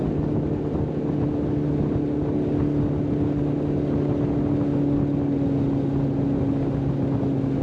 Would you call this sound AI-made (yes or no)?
no